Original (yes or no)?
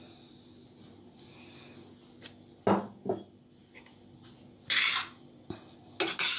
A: yes